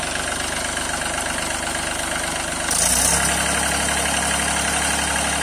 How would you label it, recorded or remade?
recorded